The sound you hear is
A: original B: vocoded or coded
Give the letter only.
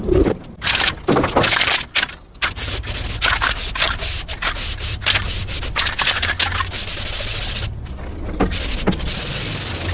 A